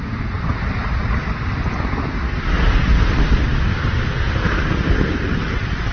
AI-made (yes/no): yes